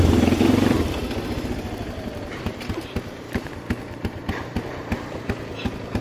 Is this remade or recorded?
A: recorded